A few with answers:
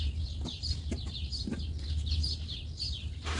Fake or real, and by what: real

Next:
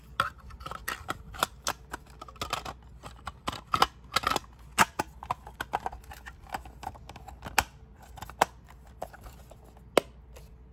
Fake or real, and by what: real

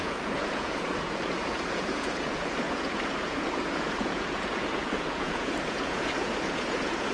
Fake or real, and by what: fake, vocoder, Vocos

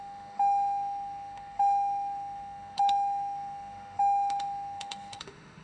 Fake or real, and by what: fake, autoencoder, DAC-VAE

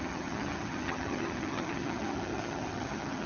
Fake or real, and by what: fake, vocoder, HiFi-GAN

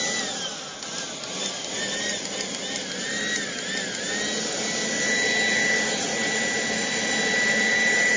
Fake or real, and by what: real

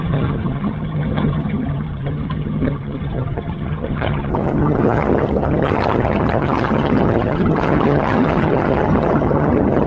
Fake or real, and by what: fake, vocoder, HiFi-GAN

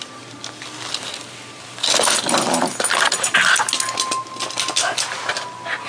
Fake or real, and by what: real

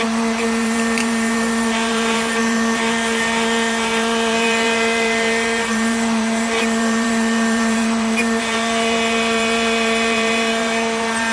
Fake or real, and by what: fake, vocoder, BigVGAN v2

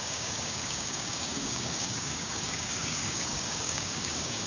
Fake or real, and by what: fake, codec, DAC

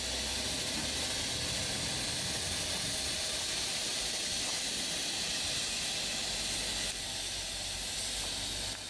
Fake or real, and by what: real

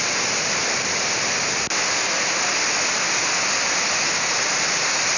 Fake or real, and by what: real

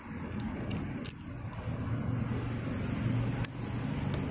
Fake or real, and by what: real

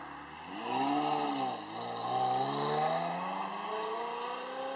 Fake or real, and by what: real